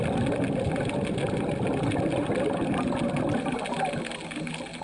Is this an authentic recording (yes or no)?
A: yes